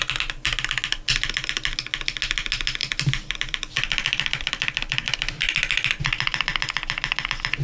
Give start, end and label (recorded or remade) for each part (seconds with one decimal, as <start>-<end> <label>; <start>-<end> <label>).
0.0-2.8 recorded; 2.8-4.5 remade; 4.5-7.6 recorded